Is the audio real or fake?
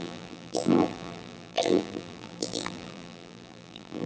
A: fake